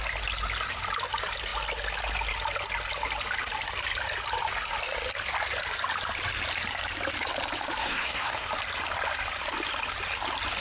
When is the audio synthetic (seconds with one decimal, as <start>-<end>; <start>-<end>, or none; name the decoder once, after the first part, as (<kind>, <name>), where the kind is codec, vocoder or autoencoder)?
7.8-8.5 (codec, SNAC)